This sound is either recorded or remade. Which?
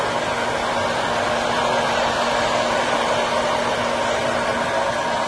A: recorded